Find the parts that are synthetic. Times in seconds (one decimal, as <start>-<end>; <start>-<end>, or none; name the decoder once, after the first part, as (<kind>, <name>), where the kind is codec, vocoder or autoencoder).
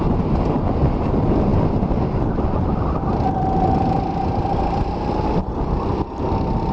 none